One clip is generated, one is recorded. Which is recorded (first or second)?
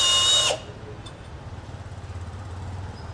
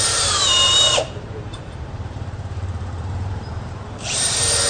first